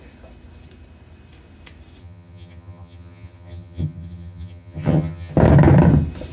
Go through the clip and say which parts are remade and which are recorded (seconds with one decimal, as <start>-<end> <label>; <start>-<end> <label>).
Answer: 0.0-2.0 recorded; 2.0-5.3 remade; 5.3-6.3 recorded